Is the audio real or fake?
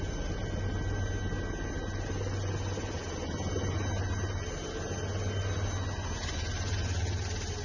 real